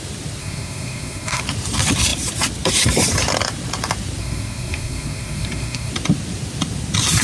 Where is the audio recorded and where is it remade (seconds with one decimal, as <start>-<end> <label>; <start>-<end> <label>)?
0.0-0.4 recorded; 0.4-1.4 remade; 1.4-4.2 recorded; 4.2-5.9 remade; 5.9-7.2 recorded